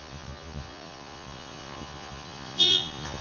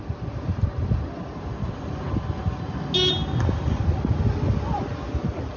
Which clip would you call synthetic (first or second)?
first